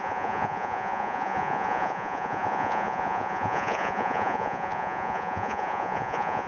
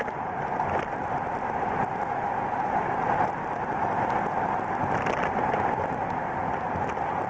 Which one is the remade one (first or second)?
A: first